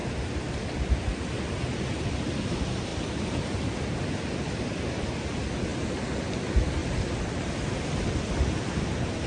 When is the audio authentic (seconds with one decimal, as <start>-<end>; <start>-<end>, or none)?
0.0-2.9; 3.9-6.8; 8.8-9.3